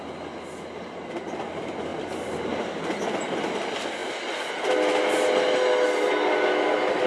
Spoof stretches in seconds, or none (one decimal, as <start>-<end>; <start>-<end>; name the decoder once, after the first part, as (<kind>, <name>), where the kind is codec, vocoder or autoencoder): none